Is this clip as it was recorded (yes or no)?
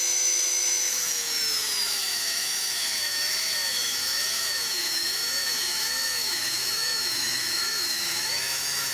no